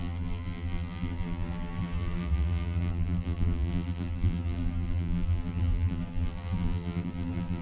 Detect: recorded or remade remade